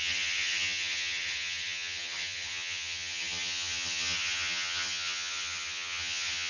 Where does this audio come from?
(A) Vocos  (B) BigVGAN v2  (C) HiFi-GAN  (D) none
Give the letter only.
C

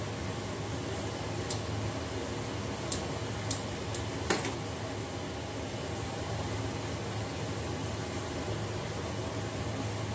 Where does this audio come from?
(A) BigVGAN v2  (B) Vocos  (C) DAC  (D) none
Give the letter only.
D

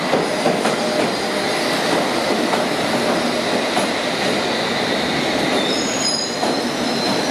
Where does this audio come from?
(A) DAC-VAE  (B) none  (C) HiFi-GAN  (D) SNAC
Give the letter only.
B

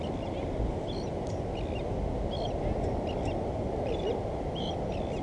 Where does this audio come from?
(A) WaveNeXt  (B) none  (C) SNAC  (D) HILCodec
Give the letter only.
B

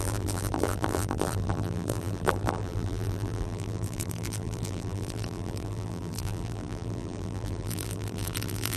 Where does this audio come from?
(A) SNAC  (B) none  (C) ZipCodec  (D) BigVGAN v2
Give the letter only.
D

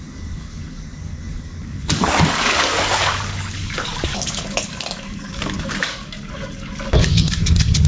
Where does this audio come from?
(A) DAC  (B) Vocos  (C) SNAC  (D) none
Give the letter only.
A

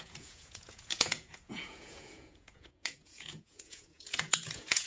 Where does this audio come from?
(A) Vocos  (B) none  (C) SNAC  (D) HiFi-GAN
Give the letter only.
A